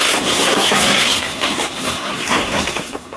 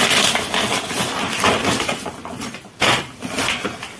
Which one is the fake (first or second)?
first